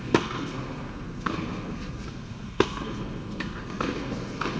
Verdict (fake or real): fake